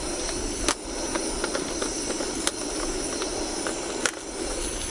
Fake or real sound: real